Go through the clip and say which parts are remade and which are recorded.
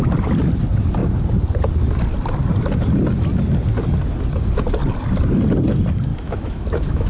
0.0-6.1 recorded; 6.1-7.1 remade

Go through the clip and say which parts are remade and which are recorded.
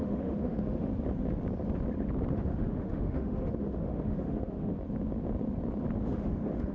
0.0-0.9 remade; 0.9-2.3 recorded; 2.3-4.7 remade; 4.7-6.0 recorded; 6.0-6.7 remade